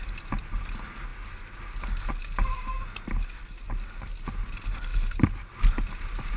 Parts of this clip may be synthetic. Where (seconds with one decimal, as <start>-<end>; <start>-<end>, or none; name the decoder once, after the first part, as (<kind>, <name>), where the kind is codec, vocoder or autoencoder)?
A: none